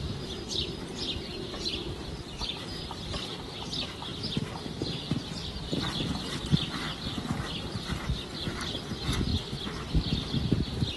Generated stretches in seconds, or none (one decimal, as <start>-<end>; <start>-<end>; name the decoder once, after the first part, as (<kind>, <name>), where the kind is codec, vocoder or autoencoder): none